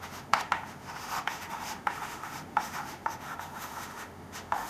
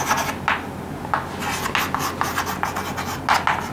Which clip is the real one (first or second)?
second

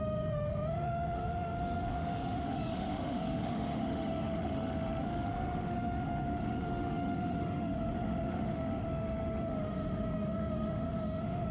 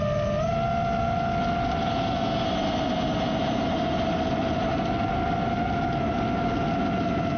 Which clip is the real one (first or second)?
second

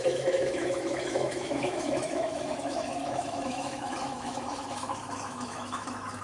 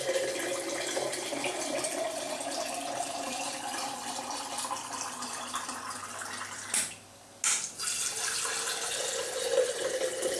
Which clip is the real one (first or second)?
second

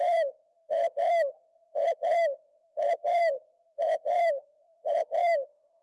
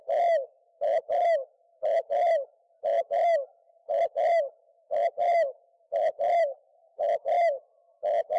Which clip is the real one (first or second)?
second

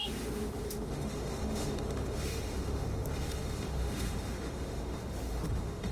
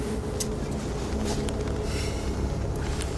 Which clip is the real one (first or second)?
second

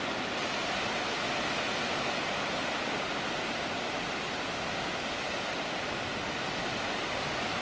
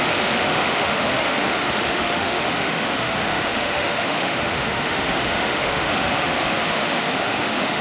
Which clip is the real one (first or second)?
first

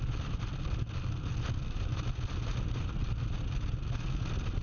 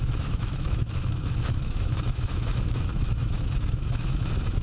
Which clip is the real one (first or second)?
first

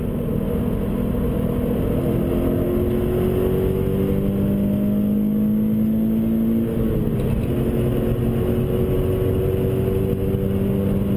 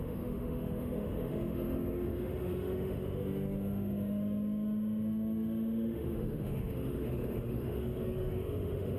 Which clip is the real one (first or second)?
first